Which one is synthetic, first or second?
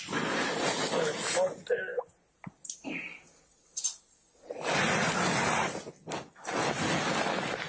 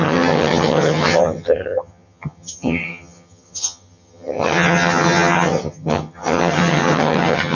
second